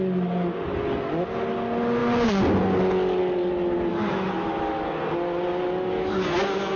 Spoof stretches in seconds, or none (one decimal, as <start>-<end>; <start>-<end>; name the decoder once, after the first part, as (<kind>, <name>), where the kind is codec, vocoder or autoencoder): 3.9-4.6 (autoencoder, DAC-VAE)